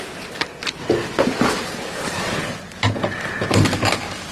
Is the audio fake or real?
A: real